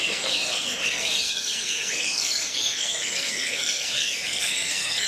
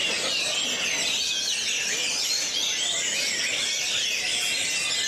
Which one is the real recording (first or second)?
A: second